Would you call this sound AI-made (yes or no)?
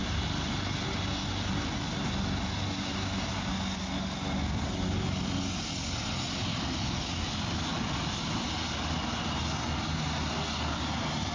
no